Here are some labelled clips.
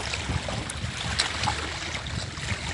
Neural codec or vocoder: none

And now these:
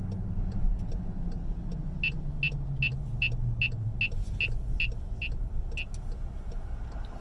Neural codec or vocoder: none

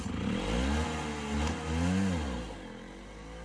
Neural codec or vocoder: none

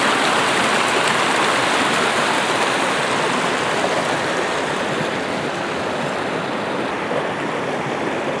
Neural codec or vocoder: none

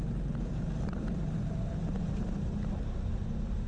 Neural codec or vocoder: none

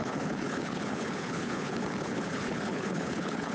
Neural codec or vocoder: codec, HILCodec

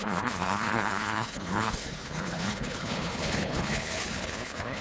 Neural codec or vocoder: codec, HILCodec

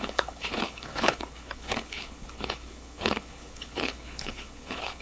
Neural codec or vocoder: codec, HILCodec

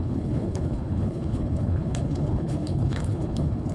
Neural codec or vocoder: codec, HILCodec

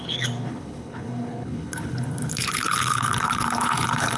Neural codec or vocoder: codec, HILCodec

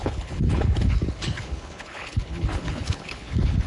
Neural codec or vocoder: codec, HILCodec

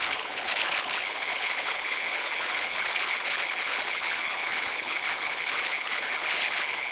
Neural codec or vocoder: codec, HILCodec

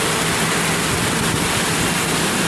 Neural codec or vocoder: none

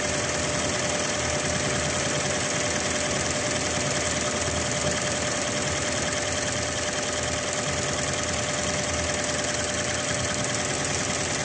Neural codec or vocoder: none